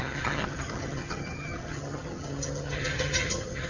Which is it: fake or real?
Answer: fake